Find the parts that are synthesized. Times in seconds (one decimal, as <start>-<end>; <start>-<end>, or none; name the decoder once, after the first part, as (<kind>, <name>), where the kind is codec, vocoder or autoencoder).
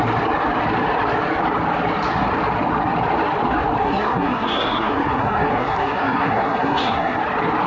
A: 3.8-7.2 (codec, SNAC)